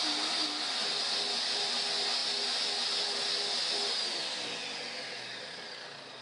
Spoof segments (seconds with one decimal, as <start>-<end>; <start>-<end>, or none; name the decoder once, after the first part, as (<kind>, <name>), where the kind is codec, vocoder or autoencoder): none